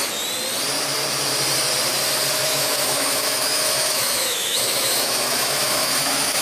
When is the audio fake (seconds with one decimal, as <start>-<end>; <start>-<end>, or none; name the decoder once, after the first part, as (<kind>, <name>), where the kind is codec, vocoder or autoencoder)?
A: 2.4-6.4 (autoencoder, DAC-VAE)